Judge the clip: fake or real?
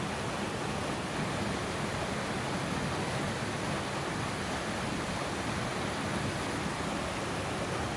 real